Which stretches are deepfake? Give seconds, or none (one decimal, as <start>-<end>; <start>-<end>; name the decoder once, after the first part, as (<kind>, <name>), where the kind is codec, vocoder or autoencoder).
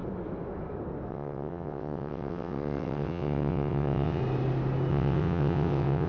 1.1-4.2 (vocoder, WaveNeXt); 4.9-6.1